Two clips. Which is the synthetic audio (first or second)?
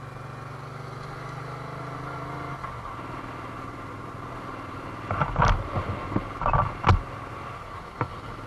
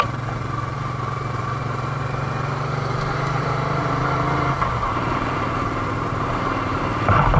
second